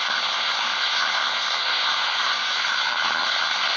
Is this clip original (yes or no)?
no